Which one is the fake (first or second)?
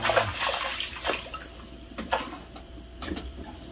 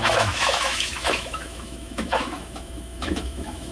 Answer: second